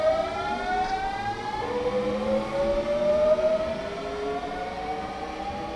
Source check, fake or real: real